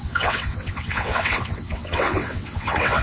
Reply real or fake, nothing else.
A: fake